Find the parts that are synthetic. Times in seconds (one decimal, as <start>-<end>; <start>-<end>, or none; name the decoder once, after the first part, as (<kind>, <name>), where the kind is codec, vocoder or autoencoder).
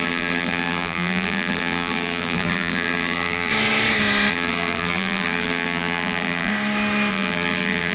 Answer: 0.0-3.5 (vocoder, BigVGAN v2); 4.3-6.5; 7.1-7.9